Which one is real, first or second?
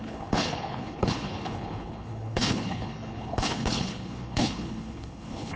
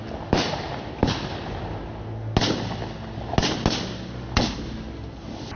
second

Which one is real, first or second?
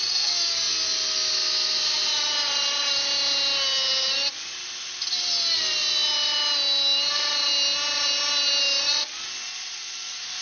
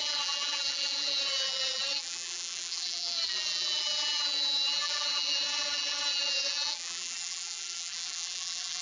first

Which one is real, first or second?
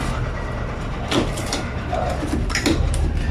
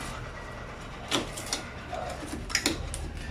second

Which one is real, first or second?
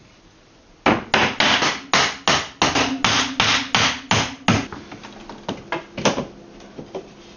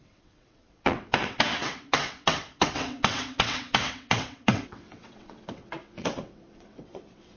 first